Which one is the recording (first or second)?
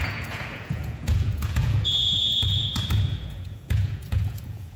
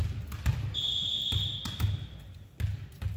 second